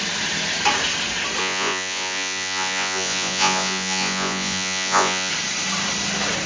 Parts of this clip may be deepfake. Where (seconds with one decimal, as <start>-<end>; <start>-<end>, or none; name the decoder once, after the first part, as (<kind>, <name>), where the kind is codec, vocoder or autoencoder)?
1.4-5.3 (vocoder, Vocos)